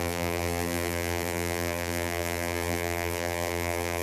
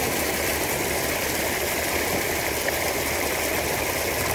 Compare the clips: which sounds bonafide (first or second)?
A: second